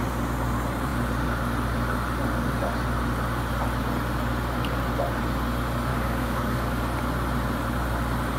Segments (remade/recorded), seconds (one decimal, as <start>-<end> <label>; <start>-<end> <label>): 0.0-5.9 recorded; 5.9-6.8 remade; 6.8-8.4 recorded